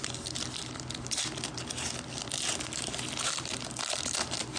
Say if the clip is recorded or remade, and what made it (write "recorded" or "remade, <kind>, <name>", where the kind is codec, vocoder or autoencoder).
recorded